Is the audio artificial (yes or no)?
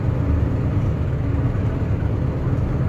no